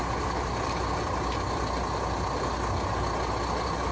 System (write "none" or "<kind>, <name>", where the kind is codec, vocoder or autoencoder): none